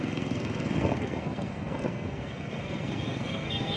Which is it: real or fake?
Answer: fake